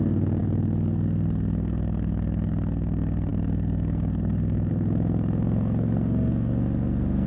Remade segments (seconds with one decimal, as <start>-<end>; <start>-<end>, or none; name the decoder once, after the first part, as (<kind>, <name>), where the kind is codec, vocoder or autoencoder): 0.0-7.3 (codec, SNAC)